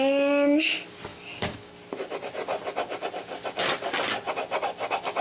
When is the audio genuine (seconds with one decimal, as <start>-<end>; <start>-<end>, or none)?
0.0-1.1; 1.7-5.2